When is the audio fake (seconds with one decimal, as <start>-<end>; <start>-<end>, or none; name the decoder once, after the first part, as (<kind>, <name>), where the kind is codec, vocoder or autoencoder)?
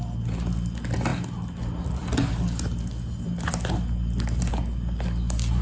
none